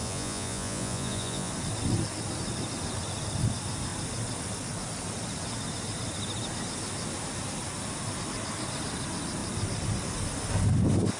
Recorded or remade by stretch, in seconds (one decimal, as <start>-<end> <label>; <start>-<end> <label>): 0.0-1.5 remade; 1.5-11.2 recorded